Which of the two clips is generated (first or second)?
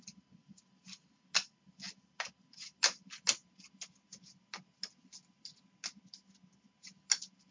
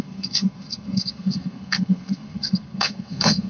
second